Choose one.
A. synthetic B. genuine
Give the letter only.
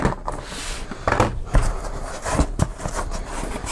B